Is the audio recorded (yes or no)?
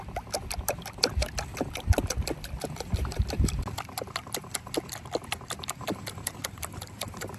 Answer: yes